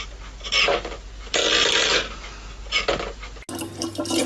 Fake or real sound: real